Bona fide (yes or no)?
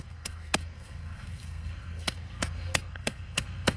no